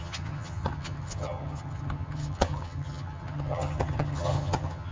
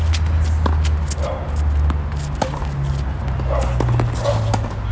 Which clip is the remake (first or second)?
first